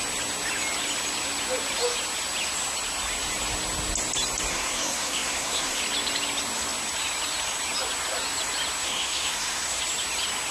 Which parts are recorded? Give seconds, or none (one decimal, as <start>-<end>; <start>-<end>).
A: 0.0-4.5; 5.8-8.8; 9.8-10.5